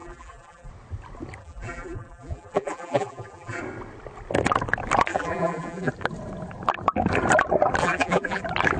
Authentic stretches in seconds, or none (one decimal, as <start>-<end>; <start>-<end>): 0.7-1.4; 3.6-5.1; 5.9-7.8; 8.4-8.8